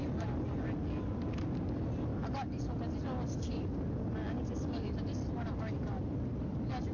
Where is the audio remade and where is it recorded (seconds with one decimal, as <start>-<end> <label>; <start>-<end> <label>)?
0.0-6.9 recorded